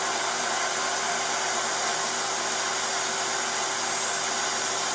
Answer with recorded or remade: recorded